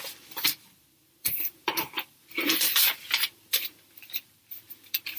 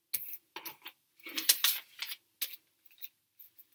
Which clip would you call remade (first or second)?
first